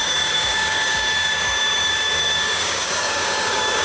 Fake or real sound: fake